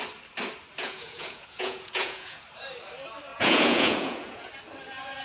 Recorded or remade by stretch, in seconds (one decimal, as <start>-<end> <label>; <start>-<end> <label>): 0.0-0.8 recorded; 0.8-2.4 remade; 2.4-3.3 recorded; 3.3-4.5 remade; 4.5-5.2 recorded